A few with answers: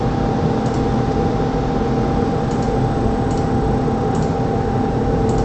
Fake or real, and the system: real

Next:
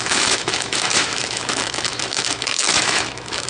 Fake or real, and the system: fake, autoencoder, DAC-VAE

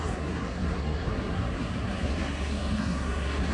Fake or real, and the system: fake, codec, SNAC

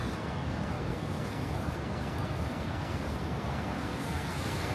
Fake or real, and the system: fake, codec, SNAC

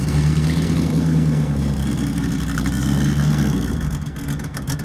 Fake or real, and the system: fake, codec, SNAC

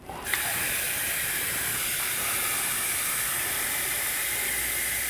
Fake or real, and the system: fake, vocoder, BigVGAN v2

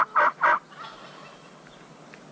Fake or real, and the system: real